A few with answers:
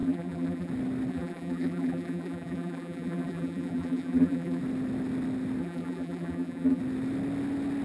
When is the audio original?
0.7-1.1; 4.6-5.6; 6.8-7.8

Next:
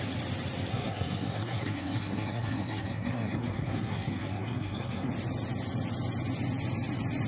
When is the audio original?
0.0-0.7; 5.1-7.3

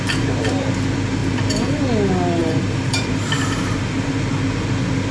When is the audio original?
0.0-1.2; 1.8-2.4; 4.1-5.1

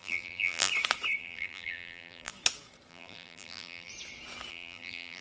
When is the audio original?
0.7-1.2; 2.3-2.9; 3.9-4.5

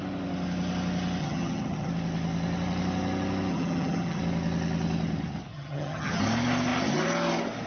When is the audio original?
0.0-1.2; 1.9-3.5; 4.2-5.5; 6.2-7.7